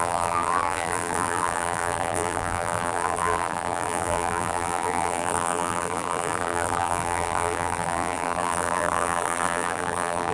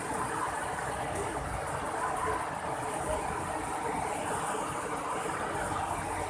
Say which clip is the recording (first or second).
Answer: second